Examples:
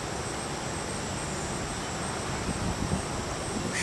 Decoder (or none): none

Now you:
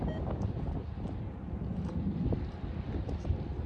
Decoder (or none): none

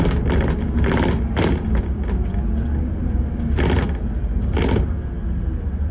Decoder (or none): none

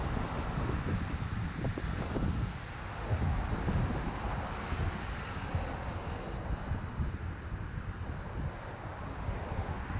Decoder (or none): none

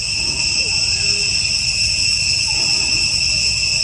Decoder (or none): none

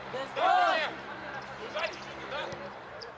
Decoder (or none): vocoder, BigVGAN v2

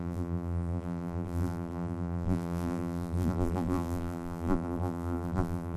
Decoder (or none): vocoder, BigVGAN v2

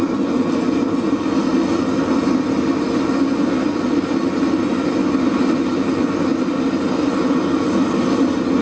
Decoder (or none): none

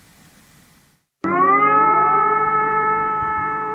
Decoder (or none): vocoder, BigVGAN v2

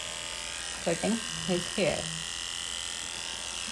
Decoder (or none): none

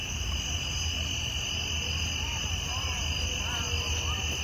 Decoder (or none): none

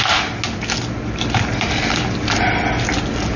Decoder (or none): none